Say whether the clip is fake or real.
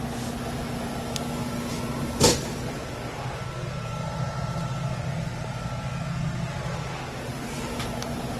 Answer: real